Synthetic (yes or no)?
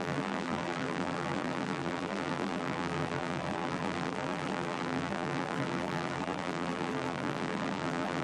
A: yes